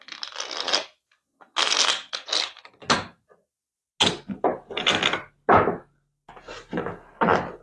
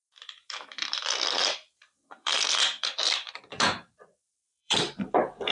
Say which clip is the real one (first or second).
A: first